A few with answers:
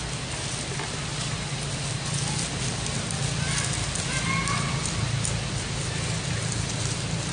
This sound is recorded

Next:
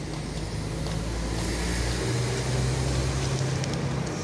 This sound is recorded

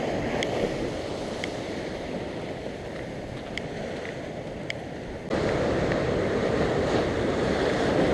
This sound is recorded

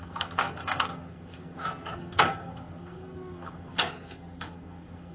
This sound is remade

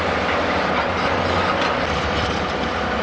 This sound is recorded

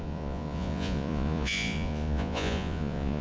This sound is remade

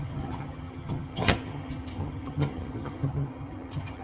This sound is remade